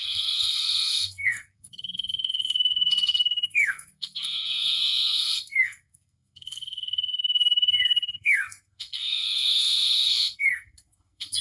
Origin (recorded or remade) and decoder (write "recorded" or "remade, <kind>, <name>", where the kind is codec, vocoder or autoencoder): remade, codec, SNAC